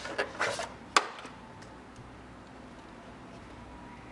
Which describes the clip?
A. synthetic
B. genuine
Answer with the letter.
B